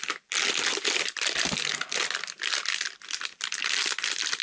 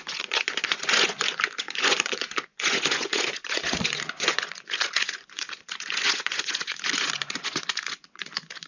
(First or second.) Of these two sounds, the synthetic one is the second